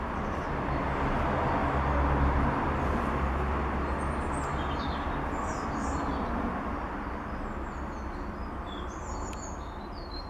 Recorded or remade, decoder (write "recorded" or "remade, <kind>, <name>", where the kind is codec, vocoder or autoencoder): recorded